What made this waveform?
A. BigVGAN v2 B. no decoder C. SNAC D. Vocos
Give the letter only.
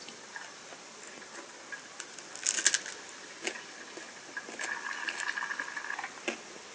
B